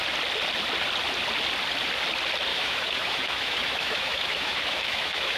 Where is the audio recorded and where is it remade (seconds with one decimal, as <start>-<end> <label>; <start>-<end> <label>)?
0.0-2.5 recorded; 2.5-5.4 remade